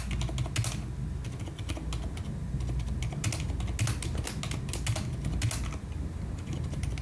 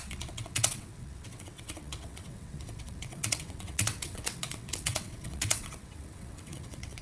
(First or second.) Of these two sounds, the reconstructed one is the second